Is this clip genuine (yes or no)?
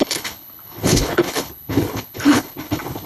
no